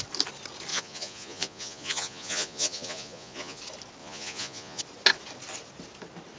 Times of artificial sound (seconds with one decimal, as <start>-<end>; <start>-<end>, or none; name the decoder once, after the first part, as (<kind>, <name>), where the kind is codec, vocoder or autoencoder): 0.7-3.6 (vocoder, Vocos); 4.0-4.8